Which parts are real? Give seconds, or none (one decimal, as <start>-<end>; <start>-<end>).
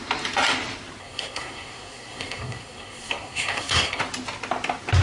0.0-1.0; 4.0-5.0